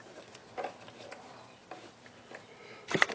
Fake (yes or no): no